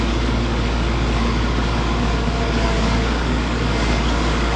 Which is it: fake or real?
fake